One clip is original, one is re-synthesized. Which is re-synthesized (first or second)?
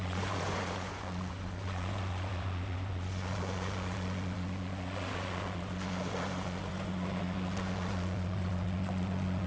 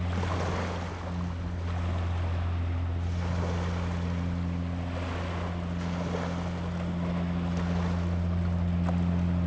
first